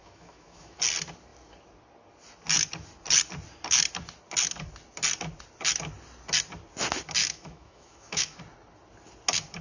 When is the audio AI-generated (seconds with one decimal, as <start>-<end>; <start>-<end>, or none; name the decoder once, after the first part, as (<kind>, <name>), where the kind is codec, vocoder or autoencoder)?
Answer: 0.0-0.8 (autoencoder, DAC-VAE); 7.2-8.4